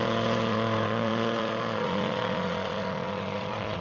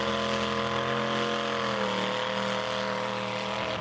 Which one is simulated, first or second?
first